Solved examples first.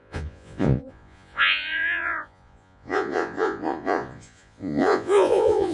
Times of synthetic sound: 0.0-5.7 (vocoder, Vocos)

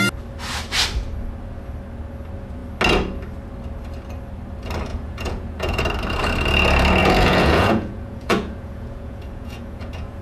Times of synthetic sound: 4.9-5.8 (vocoder, Vocos); 7.0-10.2

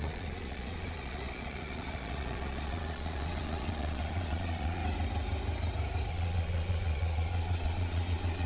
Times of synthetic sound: 0.0-4.8 (vocoder, Vocos); 6.1-8.5

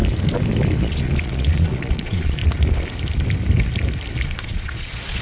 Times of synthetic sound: 0.8-2.4 (vocoder, Vocos); 4.4-5.2

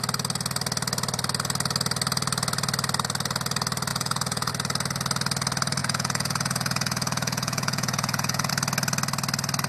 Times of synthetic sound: 3.9-4.5 (vocoder, Vocos); 5.8-8.5

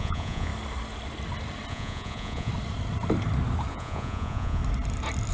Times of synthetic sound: 0.0-0.5 (vocoder, Vocos); 1.7-2.5; 3.7-4.6